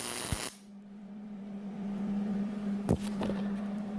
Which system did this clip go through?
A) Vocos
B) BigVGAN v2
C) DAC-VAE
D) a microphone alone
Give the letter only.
B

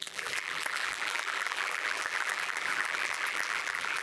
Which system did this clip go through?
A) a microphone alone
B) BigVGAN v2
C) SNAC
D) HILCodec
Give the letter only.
B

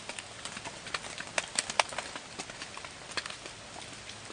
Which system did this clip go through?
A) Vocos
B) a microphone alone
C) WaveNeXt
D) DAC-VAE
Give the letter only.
B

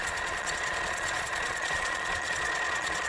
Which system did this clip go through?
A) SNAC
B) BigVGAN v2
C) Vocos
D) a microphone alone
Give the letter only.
C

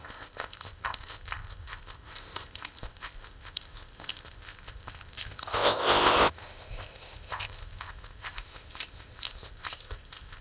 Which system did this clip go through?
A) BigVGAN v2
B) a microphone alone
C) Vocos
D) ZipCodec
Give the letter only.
D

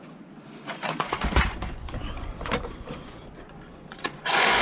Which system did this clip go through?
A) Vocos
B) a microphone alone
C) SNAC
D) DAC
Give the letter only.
A